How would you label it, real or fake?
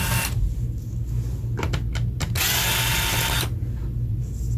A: real